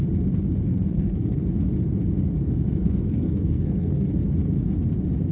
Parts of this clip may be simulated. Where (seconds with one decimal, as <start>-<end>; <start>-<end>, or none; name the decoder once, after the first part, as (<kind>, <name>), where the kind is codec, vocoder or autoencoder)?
0.7-1.4 (codec, SNAC); 2.8-4.1